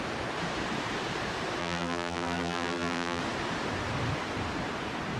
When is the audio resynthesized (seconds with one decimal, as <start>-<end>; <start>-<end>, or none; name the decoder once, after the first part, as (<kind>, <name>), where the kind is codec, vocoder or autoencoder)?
1.6-3.2 (vocoder, BigVGAN v2)